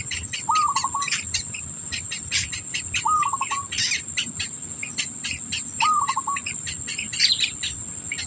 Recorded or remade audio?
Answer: recorded